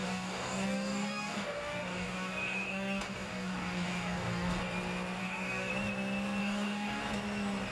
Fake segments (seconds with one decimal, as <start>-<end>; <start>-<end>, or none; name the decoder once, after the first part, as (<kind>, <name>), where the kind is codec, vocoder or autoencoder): 0.0-4.6 (codec, DAC); 5.2-5.7; 6.4-7.0